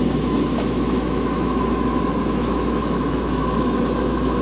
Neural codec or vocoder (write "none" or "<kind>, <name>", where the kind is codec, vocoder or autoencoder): autoencoder, DAC-VAE